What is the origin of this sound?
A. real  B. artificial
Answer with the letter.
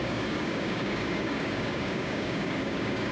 B